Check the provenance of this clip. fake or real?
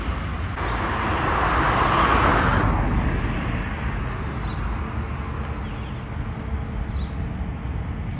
real